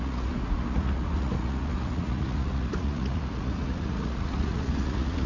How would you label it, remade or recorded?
remade